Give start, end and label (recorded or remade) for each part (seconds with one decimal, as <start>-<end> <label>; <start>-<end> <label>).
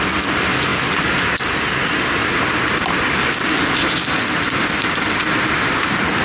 0.0-6.2 recorded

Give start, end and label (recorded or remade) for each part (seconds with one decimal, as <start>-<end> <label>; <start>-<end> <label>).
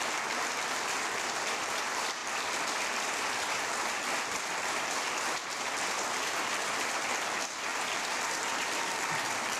0.0-7.7 remade; 7.7-8.6 recorded; 8.6-9.6 remade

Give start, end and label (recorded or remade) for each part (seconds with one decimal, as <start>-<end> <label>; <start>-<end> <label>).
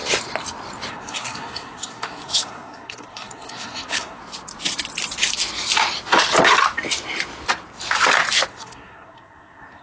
0.0-0.9 recorded; 0.9-4.2 remade; 4.2-8.5 recorded; 8.5-9.8 remade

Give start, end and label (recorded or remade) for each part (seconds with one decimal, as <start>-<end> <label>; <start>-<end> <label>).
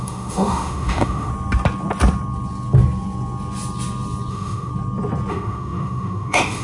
0.0-1.3 remade; 1.3-4.3 recorded; 4.3-4.7 remade; 4.7-5.3 recorded; 5.3-6.6 remade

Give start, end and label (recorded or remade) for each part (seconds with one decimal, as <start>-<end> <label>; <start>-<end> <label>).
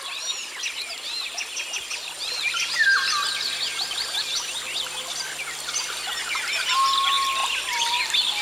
0.0-8.4 recorded